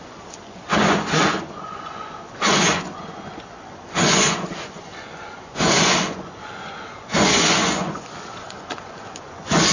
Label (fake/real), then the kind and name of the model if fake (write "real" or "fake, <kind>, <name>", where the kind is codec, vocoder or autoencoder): fake, vocoder, Vocos